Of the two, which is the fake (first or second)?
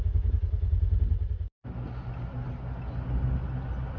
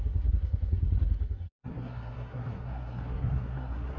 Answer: second